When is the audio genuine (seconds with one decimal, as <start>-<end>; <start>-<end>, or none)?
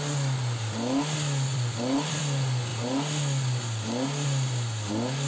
0.0-1.5; 2.2-5.3